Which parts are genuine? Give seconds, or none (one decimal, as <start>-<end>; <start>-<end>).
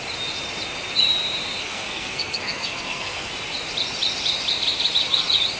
0.0-1.6; 3.3-5.6